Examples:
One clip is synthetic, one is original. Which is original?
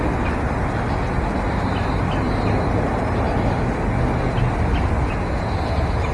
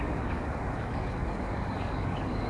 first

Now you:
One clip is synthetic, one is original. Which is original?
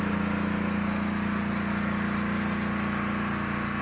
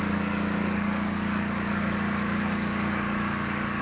first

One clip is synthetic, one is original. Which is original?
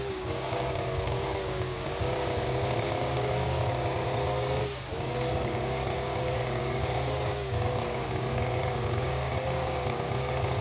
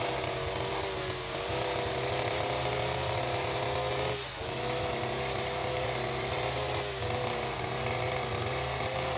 second